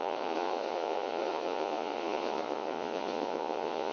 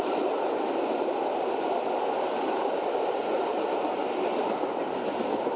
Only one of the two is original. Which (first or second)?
second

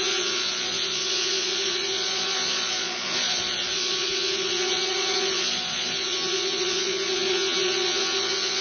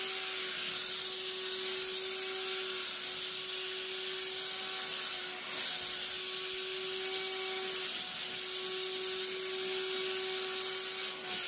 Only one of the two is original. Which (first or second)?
second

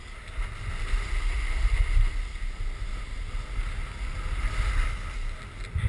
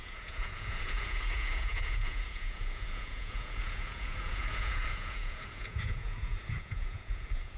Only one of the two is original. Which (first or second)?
first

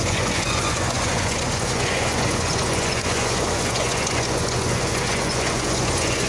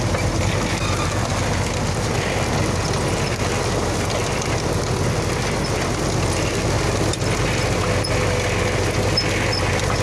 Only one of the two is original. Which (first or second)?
second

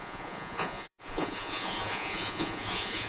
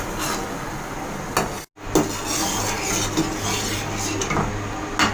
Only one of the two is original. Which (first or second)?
second